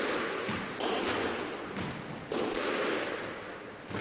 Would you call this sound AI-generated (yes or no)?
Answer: no